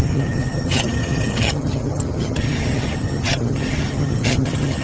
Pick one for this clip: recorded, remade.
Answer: remade